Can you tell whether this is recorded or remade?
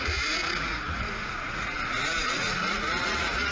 remade